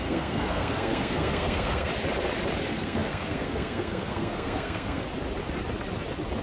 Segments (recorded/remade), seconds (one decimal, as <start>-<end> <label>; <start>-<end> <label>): 0.0-1.9 remade; 1.9-2.6 recorded; 2.6-5.0 remade; 5.0-6.4 recorded